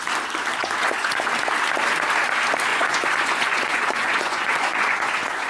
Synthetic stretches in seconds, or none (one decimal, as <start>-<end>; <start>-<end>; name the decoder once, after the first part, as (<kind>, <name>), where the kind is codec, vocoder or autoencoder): 0.6-1.3 (vocoder, Vocos); 2.7-5.5